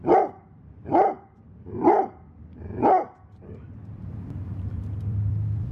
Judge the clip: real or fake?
fake